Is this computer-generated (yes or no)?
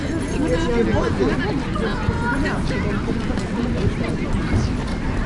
no